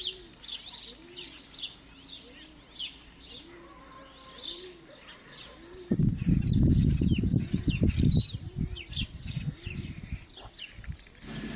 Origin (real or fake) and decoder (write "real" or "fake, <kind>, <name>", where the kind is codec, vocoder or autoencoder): real